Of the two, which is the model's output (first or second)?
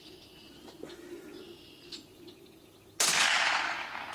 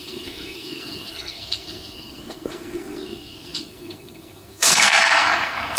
second